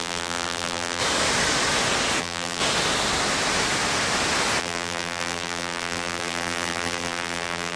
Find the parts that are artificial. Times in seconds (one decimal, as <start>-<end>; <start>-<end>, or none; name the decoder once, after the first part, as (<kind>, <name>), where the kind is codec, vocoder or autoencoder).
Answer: 0.0-1.0 (vocoder, BigVGAN v2); 2.2-2.6; 4.6-7.8